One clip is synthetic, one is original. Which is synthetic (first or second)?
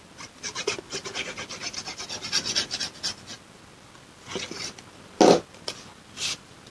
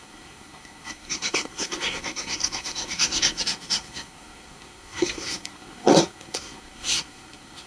second